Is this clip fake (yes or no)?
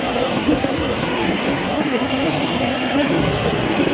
yes